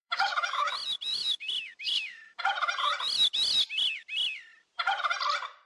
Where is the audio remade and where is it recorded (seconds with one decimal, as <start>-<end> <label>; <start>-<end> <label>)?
0.0-0.7 remade; 0.7-1.1 recorded; 1.1-2.4 remade; 2.4-5.7 recorded